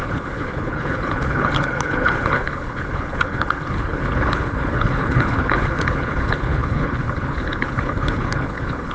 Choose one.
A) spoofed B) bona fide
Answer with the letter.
A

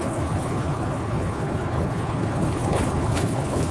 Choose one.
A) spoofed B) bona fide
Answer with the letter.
A